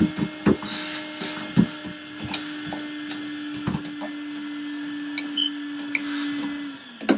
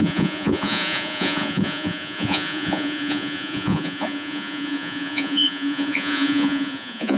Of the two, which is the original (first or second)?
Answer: first